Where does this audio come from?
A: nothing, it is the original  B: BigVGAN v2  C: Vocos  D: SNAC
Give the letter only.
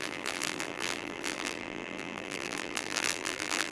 B